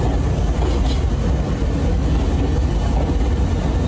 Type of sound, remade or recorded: recorded